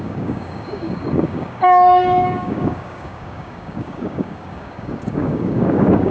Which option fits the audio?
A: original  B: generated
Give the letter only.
B